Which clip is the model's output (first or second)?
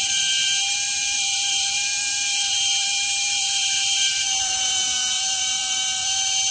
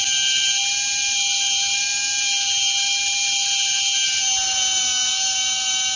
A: first